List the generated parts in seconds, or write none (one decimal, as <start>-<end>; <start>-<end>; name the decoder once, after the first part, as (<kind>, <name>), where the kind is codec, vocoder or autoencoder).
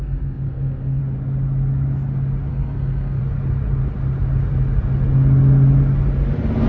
0.0-1.0 (codec, SNAC); 2.5-3.2